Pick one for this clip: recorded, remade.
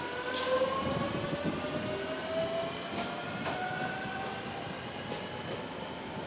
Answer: recorded